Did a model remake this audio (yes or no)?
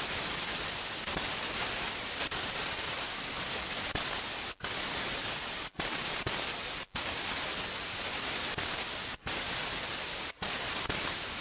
no